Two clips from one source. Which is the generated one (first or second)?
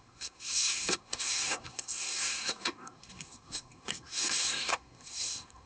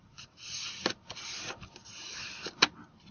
first